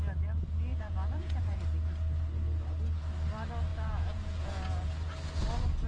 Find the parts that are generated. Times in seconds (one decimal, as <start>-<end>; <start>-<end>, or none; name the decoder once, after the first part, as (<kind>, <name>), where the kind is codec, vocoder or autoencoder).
0.7-1.6 (vocoder, Vocos); 3.7-4.9